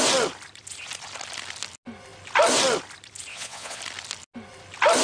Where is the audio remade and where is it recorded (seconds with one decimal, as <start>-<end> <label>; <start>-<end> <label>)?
0.0-3.3 recorded; 3.3-3.8 remade; 3.8-5.0 recorded